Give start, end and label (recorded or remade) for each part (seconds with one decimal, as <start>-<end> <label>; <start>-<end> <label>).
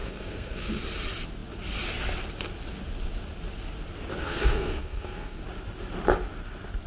0.0-0.8 remade; 0.8-4.2 recorded; 4.2-5.4 remade; 5.4-6.9 recorded